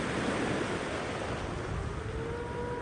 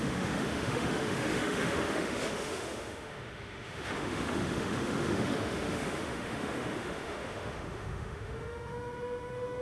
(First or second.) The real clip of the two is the first